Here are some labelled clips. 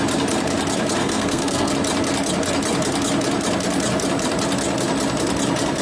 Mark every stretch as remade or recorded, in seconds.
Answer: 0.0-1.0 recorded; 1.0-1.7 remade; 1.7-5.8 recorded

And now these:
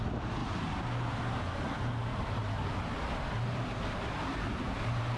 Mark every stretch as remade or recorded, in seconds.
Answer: 0.0-0.4 recorded; 0.4-1.4 remade; 1.4-2.1 recorded; 2.1-5.2 remade

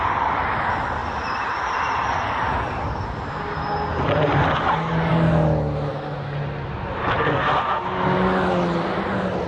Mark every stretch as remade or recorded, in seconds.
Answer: 0.0-9.5 recorded